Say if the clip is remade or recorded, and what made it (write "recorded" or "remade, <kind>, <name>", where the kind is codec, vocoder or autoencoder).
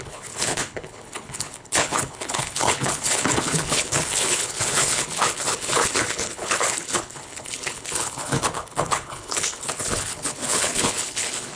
remade, codec, HILCodec